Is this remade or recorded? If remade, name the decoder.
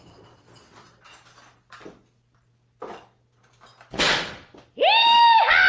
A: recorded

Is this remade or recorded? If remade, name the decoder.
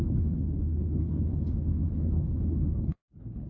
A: remade, codec, HILCodec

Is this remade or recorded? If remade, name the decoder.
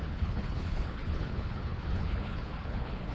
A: remade, codec, HILCodec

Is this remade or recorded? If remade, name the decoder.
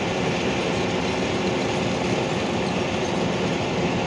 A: recorded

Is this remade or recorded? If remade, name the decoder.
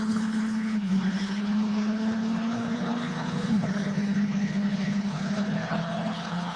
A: remade, codec, HILCodec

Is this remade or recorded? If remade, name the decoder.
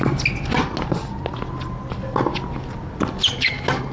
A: recorded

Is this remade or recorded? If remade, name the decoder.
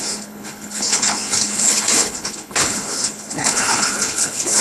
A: remade, codec, HILCodec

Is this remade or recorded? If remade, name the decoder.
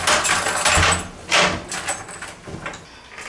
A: recorded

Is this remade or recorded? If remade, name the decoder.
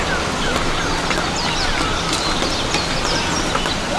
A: recorded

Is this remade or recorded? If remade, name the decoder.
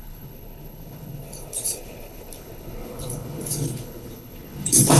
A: remade, codec, HILCodec